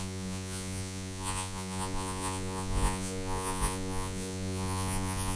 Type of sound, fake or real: fake